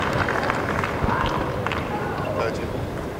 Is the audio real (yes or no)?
no